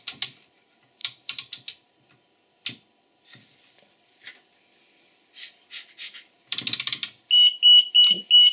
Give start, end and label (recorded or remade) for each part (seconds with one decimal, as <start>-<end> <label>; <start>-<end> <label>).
0.0-8.5 recorded